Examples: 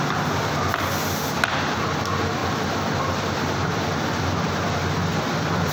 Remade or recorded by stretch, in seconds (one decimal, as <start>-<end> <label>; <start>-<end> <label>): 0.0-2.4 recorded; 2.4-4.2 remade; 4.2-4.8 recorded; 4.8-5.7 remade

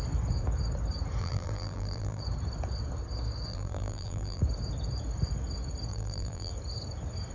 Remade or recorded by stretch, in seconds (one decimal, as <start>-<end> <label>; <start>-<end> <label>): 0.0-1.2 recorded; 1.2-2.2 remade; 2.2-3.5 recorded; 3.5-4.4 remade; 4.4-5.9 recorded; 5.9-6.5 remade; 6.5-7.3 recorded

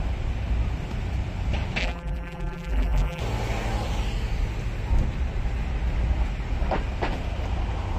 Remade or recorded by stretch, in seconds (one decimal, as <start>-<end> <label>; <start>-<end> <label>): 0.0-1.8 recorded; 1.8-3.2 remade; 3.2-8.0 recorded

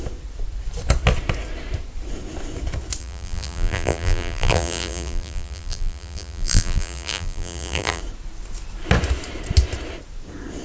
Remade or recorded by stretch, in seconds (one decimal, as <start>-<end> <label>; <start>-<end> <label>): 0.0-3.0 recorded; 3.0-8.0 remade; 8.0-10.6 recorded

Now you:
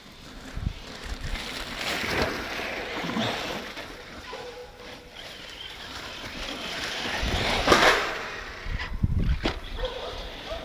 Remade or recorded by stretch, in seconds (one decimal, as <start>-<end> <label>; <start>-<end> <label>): 0.0-4.6 remade; 4.6-6.7 recorded; 6.7-10.6 remade

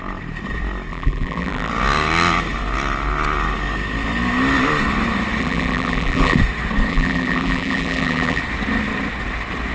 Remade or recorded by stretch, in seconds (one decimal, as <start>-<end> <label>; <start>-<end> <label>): 0.0-0.9 recorded; 0.9-1.7 remade; 1.7-5.4 recorded; 5.4-6.4 remade; 6.4-6.9 recorded; 6.9-8.4 remade; 8.4-9.7 recorded

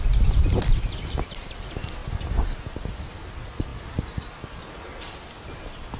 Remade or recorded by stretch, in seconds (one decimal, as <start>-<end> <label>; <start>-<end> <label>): 0.0-6.0 recorded